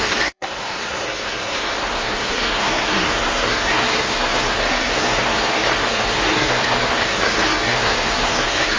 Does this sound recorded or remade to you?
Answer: remade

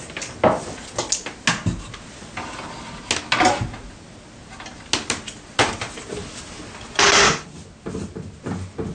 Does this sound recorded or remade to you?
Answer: recorded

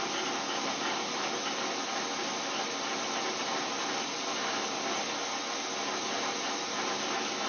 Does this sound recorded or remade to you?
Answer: recorded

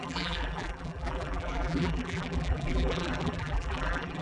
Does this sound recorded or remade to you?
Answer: remade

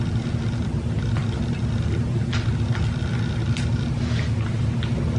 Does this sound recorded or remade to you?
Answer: recorded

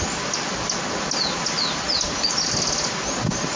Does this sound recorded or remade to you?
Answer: recorded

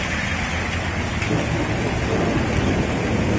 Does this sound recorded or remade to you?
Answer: recorded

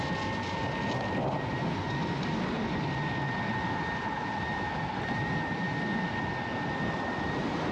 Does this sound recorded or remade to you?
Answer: recorded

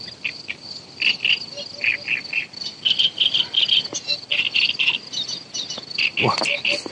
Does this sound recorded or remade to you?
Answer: recorded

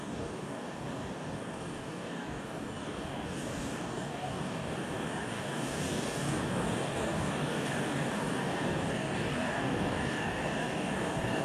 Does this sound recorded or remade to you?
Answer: remade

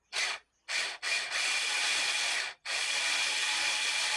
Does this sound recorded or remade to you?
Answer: recorded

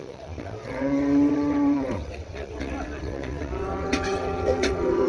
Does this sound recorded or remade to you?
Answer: remade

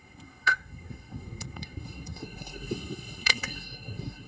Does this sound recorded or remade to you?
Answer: remade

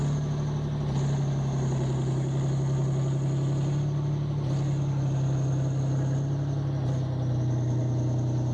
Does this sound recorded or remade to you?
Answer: recorded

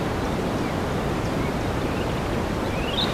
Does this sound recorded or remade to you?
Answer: remade